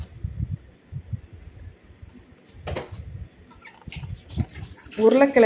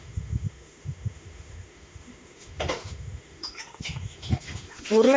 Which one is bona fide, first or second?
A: first